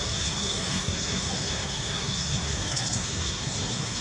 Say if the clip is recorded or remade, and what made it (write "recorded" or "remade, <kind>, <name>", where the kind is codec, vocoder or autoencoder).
remade, codec, SNAC